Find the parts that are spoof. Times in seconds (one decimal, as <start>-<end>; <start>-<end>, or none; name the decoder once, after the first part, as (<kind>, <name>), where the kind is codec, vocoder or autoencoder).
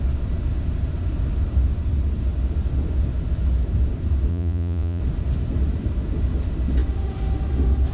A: 4.3-5.0 (vocoder, Vocos)